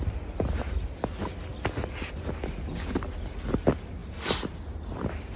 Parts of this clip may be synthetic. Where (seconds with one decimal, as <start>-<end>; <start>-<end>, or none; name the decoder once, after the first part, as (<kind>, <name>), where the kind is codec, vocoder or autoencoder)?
none